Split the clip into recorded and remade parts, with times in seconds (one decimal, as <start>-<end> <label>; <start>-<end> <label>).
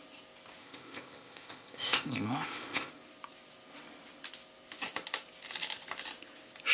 0.0-0.6 recorded; 0.6-2.9 remade; 2.9-6.7 recorded